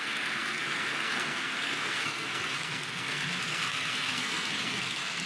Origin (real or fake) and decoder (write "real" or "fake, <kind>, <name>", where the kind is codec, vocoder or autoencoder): fake, codec, SNAC